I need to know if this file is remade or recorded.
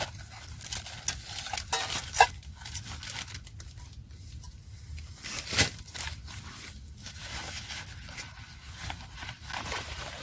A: recorded